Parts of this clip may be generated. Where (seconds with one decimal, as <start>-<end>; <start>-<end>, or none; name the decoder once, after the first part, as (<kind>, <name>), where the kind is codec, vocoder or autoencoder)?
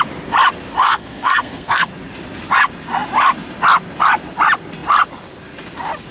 0.8-1.9 (codec, SNAC)